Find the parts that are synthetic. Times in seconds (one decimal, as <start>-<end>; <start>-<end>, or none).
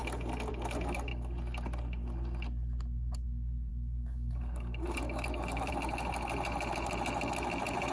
3.7-5.7